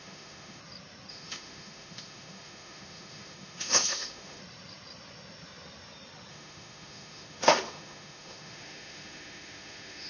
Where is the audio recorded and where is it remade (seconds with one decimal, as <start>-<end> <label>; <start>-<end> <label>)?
0.0-0.6 remade; 0.6-1.1 recorded; 1.1-4.4 remade; 4.4-6.3 recorded; 6.3-10.1 remade